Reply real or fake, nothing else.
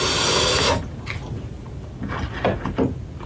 real